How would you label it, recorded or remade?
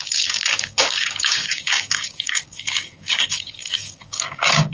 remade